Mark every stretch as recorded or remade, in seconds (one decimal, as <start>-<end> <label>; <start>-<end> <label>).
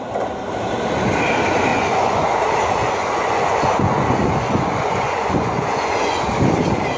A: 0.0-1.7 recorded; 1.7-2.4 remade; 2.4-2.8 recorded; 2.8-6.2 remade; 6.2-7.0 recorded